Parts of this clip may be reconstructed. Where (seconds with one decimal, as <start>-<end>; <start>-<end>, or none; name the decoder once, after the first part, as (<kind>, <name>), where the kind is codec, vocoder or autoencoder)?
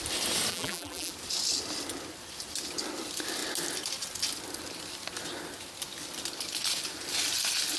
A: 0.5-1.1 (vocoder, BigVGAN v2)